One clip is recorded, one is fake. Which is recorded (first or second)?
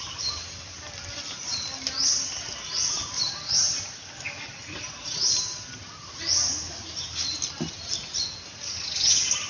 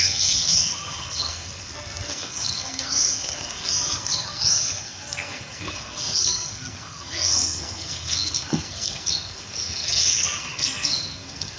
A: first